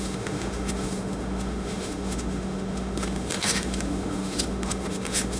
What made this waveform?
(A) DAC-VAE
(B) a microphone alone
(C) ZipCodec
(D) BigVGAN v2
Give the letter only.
A